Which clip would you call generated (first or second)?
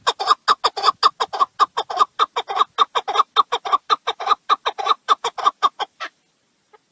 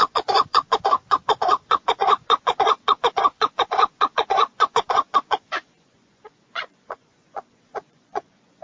second